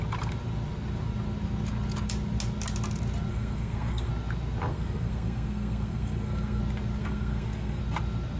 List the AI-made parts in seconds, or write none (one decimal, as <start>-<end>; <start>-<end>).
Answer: 3.3-4.1; 4.7-6.6; 7.0-7.8